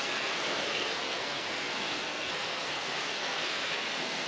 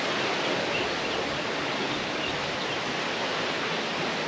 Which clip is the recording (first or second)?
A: second